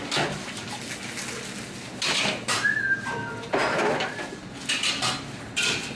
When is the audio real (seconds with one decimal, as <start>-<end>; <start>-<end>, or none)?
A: 0.0-5.9